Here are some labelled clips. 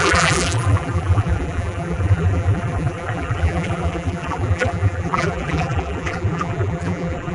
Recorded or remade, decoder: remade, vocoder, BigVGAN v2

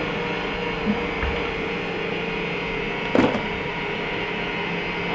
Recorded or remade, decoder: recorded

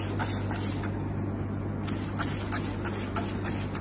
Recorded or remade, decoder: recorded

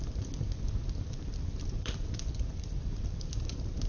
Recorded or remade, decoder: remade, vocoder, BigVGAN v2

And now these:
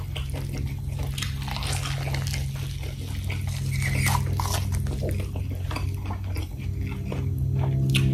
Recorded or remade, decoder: recorded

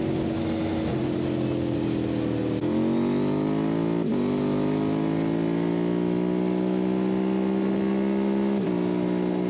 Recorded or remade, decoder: recorded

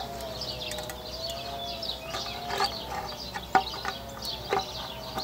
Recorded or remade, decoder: recorded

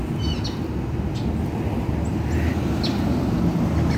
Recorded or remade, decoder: recorded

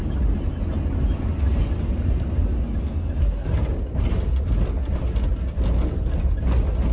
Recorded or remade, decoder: recorded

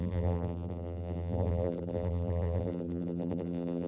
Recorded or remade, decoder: remade, vocoder, BigVGAN v2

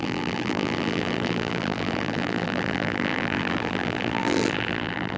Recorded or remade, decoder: remade, vocoder, BigVGAN v2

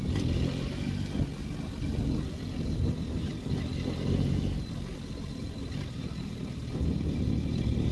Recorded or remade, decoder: recorded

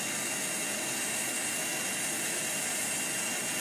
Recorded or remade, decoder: recorded